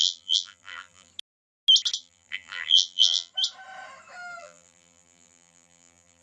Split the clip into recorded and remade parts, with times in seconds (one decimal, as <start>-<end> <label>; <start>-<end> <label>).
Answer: 0.0-1.1 remade; 1.1-2.0 recorded; 2.0-3.3 remade; 3.3-4.4 recorded; 4.4-6.2 remade